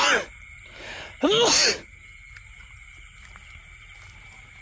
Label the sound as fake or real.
real